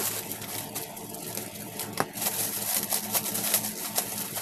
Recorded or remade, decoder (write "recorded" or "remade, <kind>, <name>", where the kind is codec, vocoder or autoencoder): recorded